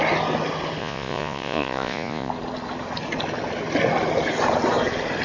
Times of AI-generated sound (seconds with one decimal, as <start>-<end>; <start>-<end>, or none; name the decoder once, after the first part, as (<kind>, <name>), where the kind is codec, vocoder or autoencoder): 0.8-2.3 (vocoder, Vocos)